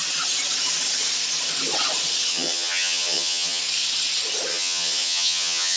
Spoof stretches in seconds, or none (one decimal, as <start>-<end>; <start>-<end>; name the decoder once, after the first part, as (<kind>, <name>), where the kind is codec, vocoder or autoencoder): 2.3-3.6 (vocoder, HiFi-GAN); 4.5-5.8

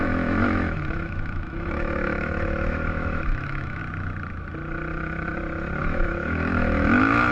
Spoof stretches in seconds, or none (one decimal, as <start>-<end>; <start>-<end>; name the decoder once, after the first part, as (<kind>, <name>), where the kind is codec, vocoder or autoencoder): 0.0-3.8 (autoencoder, DAC-VAE); 5.8-7.3

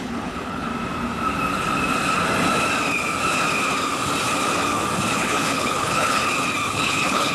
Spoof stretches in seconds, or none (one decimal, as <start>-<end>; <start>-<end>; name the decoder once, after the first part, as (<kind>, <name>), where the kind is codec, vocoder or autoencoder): 0.0-0.7 (codec, HILCodec); 5.1-6.2; 6.7-7.3

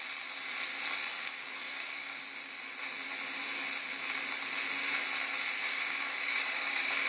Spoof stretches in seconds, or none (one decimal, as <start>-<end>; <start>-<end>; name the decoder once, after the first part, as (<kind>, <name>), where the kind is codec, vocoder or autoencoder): 1.1-2.2 (codec, DAC); 5.6-7.1

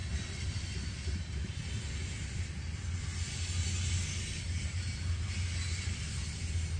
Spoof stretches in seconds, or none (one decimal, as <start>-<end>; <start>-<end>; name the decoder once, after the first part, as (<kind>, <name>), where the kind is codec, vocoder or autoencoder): none

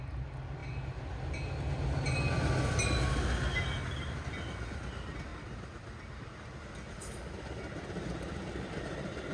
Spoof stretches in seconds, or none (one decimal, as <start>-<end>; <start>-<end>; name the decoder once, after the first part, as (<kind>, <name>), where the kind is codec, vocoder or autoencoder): none